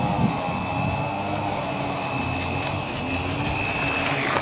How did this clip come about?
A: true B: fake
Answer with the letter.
A